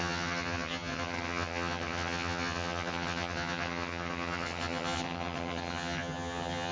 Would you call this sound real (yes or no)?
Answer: no